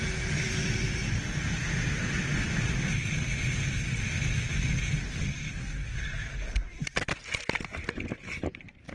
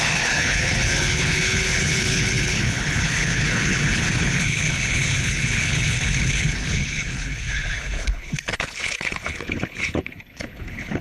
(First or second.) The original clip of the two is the first